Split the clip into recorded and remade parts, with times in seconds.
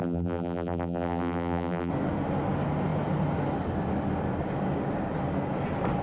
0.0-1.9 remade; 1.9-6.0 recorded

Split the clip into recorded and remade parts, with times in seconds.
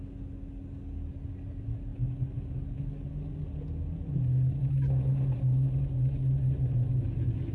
0.0-7.5 recorded